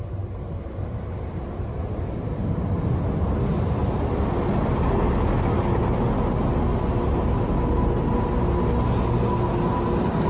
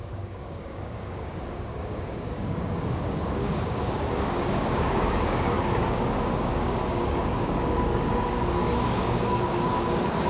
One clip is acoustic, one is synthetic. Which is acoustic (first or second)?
first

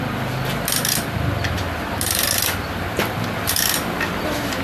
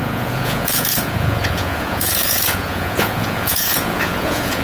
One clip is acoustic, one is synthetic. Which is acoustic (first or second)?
first